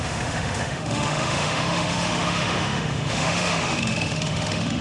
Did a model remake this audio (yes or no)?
yes